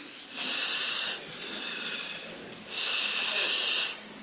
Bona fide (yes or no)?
yes